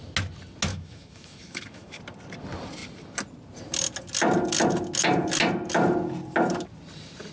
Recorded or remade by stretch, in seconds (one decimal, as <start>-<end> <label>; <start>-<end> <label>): 0.0-0.7 recorded; 0.7-2.0 remade; 2.0-7.3 recorded